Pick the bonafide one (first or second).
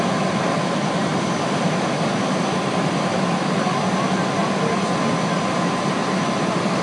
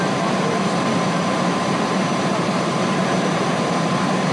first